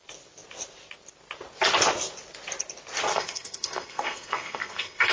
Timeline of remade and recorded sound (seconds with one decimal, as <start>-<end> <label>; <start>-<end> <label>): 0.0-3.1 recorded; 3.1-5.1 remade